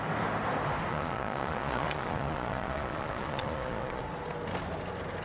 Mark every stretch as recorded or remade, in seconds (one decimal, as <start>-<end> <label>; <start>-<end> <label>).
0.0-0.9 recorded; 0.9-4.0 remade; 4.0-5.2 recorded